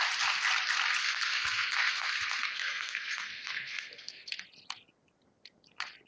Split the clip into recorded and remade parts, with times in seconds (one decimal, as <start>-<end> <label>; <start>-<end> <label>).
0.0-1.0 recorded; 1.0-4.3 remade; 4.3-6.1 recorded

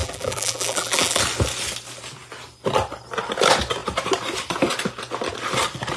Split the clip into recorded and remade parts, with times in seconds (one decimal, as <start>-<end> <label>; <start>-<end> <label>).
0.0-1.2 remade; 1.2-6.0 recorded

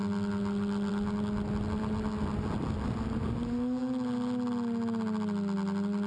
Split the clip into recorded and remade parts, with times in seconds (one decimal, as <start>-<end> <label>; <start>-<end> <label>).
0.0-6.1 recorded

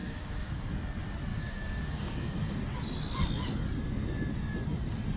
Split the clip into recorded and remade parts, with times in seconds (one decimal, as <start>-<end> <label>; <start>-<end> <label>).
0.0-0.7 remade; 0.7-1.3 recorded; 1.3-2.6 remade; 2.6-5.2 recorded

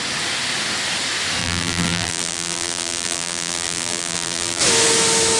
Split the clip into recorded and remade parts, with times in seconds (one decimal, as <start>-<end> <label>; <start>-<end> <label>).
0.0-1.4 recorded; 1.4-4.6 remade; 4.6-5.4 recorded

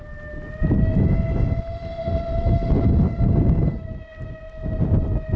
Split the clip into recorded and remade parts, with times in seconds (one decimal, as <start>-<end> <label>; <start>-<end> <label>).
0.0-5.4 recorded